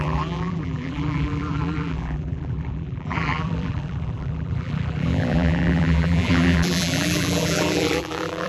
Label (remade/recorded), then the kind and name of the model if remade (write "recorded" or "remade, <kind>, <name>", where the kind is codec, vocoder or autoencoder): remade, vocoder, BigVGAN v2